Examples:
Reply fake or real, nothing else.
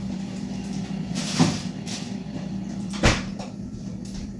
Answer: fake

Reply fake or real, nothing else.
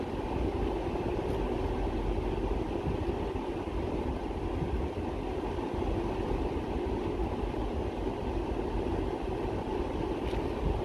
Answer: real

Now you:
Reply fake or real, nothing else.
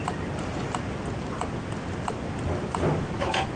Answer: real